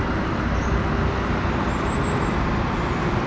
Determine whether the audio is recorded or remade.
recorded